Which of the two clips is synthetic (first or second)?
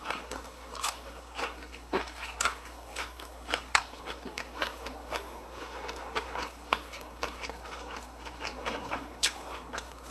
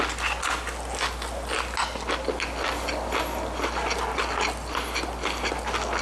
first